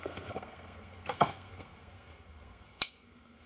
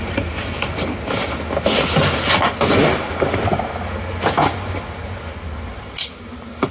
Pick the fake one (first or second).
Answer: first